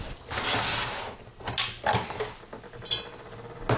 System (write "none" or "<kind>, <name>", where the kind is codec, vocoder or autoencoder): none